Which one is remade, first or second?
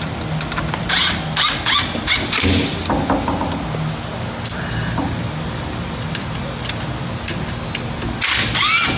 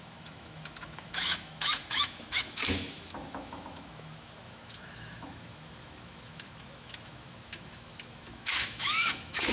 second